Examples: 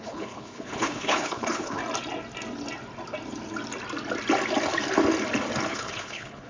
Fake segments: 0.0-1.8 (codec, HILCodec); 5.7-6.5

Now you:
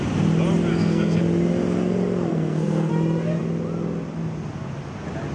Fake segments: 0.7-1.2 (codec, SNAC); 2.3-2.9

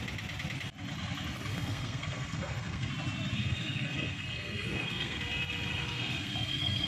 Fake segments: 1.5-2.9 (codec, SNAC); 3.4-5.2; 5.7-6.9

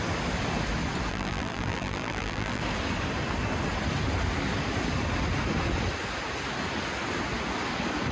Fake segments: 1.1-2.6 (vocoder, BigVGAN v2)

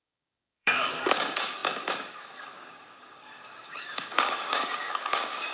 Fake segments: 0.0-5.5 (codec, DAC)

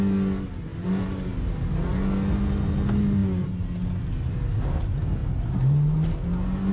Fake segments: none